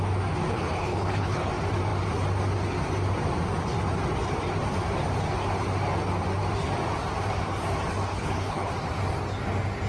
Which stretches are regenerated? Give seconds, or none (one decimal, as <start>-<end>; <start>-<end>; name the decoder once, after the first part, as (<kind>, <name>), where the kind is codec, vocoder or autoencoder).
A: 0.5-1.5 (codec, HILCodec); 8.1-8.7